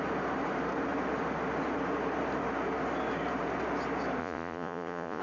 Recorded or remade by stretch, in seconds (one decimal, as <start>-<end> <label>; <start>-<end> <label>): 0.0-4.2 recorded; 4.2-5.2 remade